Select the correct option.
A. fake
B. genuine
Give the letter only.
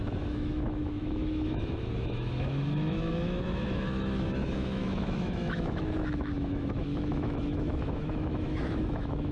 A